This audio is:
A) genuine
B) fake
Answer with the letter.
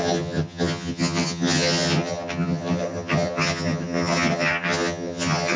B